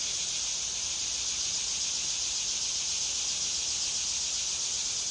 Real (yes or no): yes